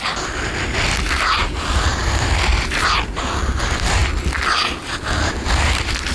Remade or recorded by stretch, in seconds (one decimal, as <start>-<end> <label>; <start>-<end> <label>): 0.0-6.1 recorded